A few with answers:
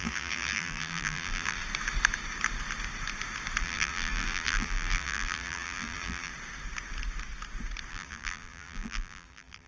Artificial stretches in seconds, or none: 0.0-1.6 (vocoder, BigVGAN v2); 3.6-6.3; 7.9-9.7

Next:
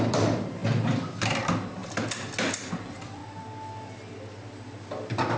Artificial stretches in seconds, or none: 0.0-1.8 (vocoder, BigVGAN v2); 2.7-3.2

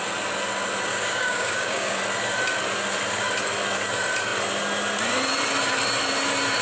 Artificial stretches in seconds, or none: 0.9-2.0 (codec, DAC)

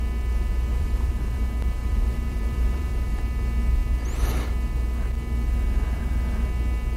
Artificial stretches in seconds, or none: 0.7-1.4 (vocoder, BigVGAN v2); 1.8-3.2

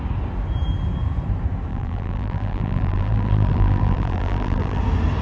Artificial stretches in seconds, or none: 1.7-4.8 (vocoder, BigVGAN v2)